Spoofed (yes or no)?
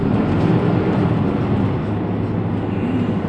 no